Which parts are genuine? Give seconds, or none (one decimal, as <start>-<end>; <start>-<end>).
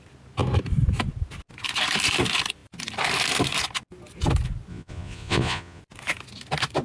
0.0-4.7; 5.8-6.8